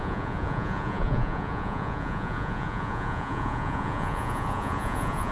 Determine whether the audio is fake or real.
fake